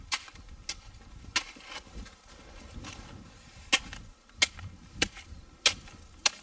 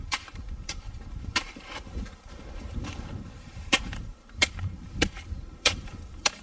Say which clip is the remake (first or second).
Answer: second